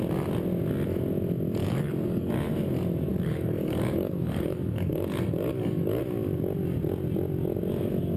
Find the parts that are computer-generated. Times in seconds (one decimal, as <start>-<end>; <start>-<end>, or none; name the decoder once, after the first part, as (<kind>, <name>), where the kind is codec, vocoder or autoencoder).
1.6-2.3 (codec, DAC); 3.1-6.0